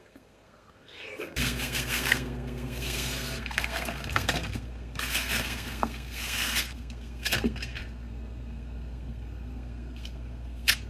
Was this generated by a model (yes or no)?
yes